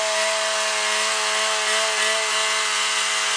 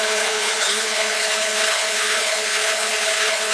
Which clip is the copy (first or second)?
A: second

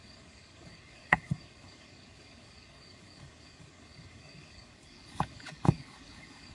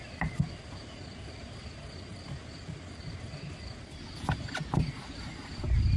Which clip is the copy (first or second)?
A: first